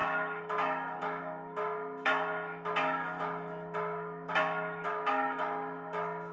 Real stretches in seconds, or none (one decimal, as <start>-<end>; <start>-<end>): none

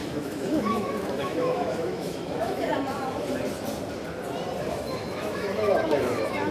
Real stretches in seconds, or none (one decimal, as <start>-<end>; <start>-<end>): 2.7-4.7

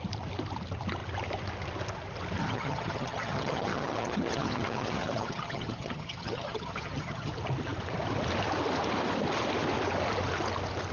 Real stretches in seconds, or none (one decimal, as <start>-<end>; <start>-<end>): 0.0-2.4; 7.3-10.9

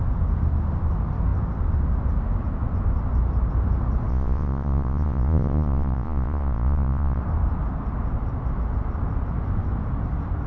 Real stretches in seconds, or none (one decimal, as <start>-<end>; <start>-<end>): 0.0-4.1; 7.2-10.5

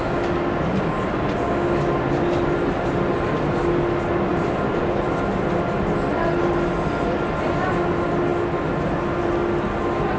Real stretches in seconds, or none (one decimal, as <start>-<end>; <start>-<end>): 0.0-4.3; 5.5-10.2

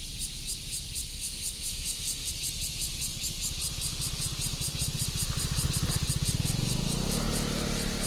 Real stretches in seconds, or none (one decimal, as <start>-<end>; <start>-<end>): 0.0-1.1; 2.3-8.1

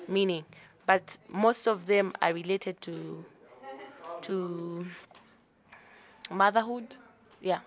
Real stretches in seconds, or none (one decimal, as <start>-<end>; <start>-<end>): 0.0-4.3; 5.0-7.7

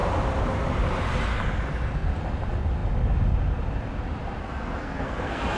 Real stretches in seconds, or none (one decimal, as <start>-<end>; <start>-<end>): 0.0-4.4